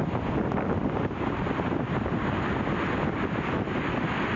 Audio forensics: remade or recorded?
recorded